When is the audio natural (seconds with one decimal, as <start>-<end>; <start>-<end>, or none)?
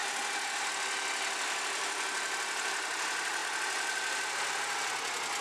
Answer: 0.0-5.4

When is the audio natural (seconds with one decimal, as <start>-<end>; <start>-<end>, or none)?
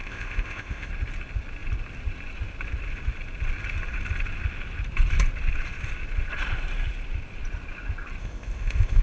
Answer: 0.9-8.2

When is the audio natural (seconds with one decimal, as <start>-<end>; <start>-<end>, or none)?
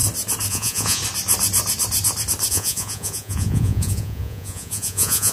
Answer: 0.0-0.5; 1.0-2.5